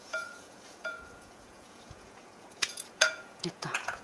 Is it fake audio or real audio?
fake